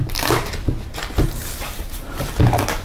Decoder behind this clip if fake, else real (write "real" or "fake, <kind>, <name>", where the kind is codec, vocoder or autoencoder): fake, vocoder, BigVGAN v2